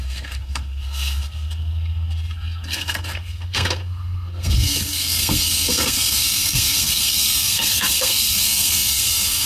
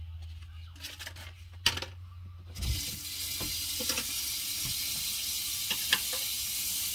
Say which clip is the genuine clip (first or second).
second